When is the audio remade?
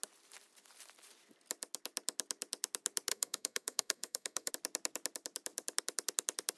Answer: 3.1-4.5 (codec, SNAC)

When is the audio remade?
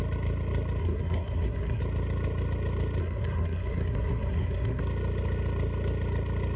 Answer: 0.8-1.8 (codec, SNAC); 3.0-4.8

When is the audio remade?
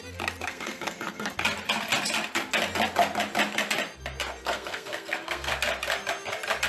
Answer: 0.4-1.3 (codec, SNAC); 4.4-5.5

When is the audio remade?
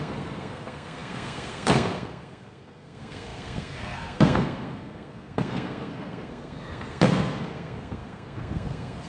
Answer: 0.0-9.1 (codec, SNAC)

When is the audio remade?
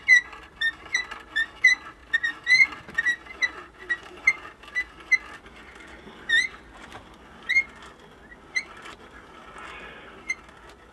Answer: none